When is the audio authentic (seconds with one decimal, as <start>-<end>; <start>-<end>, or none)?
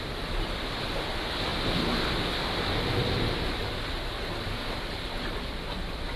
0.0-6.2